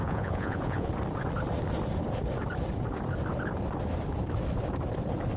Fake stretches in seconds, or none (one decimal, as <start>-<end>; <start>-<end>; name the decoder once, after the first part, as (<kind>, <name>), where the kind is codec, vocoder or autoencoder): 0.0-0.9 (vocoder, Vocos)